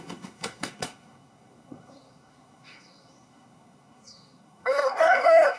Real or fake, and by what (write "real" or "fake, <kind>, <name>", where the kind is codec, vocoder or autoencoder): fake, codec, SNAC